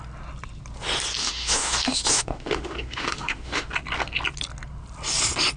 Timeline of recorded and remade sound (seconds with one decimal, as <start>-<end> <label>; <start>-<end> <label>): 0.0-1.2 recorded; 1.2-3.7 remade; 3.7-5.6 recorded